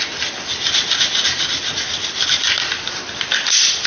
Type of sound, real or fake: real